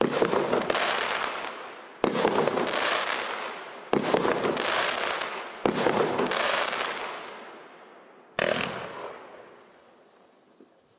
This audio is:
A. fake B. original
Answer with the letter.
B